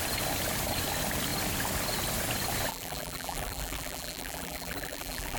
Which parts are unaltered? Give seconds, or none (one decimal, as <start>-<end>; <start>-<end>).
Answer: 0.0-2.7